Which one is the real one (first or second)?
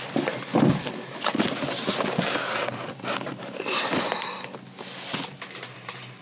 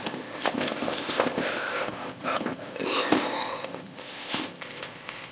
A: first